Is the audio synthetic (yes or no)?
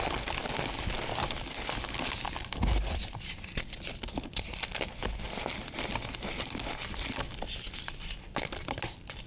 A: no